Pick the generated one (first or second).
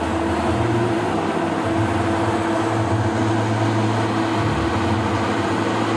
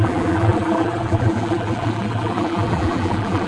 second